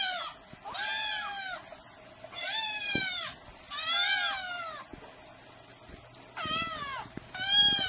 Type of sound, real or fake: real